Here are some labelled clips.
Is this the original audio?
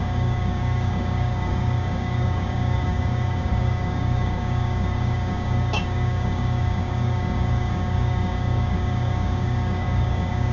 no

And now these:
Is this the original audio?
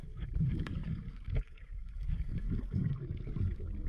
no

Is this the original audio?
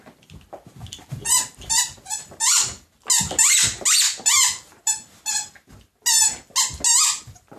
yes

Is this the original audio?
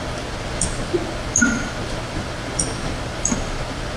yes